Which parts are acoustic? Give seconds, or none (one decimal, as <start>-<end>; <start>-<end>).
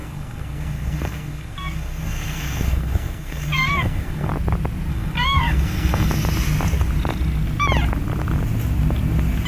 4.3-4.9; 6.1-9.5